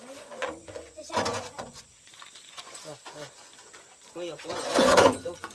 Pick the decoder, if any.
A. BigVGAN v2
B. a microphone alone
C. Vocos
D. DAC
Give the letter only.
C